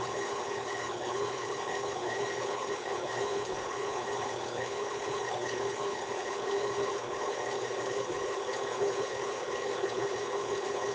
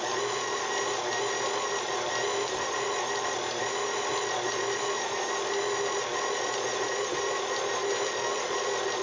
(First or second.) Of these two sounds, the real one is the second